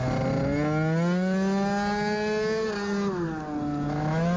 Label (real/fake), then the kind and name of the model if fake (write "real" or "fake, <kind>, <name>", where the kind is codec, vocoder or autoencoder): real